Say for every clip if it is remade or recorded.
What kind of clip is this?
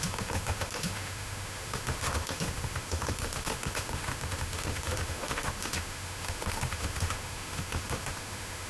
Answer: remade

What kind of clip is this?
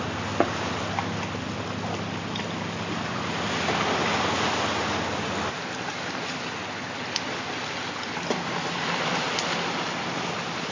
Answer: recorded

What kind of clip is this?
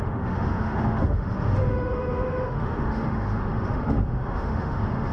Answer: remade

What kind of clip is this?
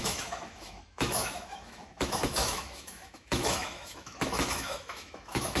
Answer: remade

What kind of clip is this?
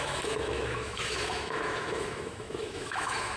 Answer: remade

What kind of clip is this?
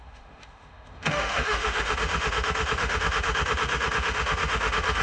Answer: remade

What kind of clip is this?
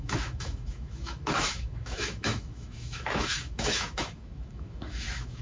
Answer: remade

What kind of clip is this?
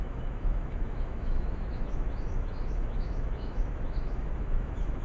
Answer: remade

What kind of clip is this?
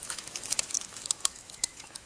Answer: remade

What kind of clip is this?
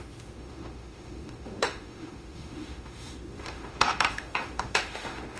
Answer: remade